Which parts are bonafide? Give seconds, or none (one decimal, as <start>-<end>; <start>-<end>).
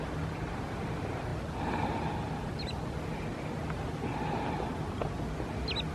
0.0-5.9